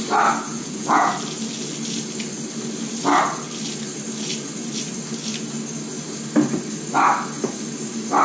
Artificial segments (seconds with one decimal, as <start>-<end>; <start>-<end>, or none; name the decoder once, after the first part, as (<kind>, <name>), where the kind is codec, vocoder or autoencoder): 0.5-1.1 (vocoder, Vocos)